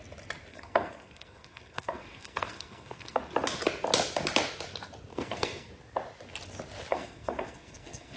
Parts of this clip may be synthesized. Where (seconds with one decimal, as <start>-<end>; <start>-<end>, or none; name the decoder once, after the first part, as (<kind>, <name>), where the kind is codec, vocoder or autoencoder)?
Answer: 0.5-3.2 (codec, SNAC); 5.1-5.7; 6.9-8.2